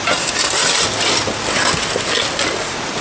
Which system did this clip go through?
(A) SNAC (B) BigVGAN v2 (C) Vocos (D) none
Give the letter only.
D